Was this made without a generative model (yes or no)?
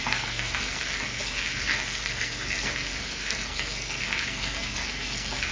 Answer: no